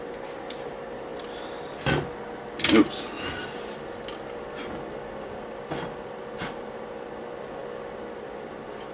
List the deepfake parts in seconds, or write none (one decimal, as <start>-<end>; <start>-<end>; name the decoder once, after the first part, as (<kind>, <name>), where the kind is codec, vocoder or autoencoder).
none